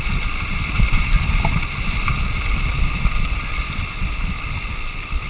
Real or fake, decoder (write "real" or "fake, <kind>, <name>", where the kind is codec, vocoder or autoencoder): real